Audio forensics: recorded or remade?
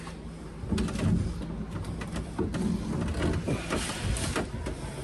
recorded